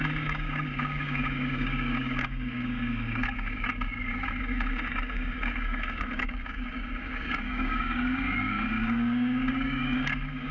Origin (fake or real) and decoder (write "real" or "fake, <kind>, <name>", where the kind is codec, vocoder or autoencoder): fake, codec, DAC